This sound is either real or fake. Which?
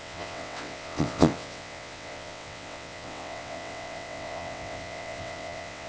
fake